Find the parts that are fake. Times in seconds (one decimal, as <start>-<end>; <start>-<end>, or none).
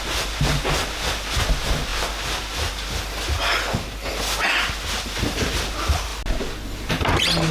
none